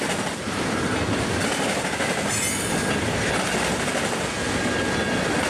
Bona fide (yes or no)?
yes